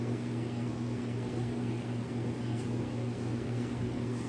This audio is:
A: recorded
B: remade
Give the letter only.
B